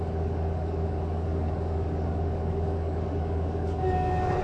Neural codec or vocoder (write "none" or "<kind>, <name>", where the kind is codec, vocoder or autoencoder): codec, DAC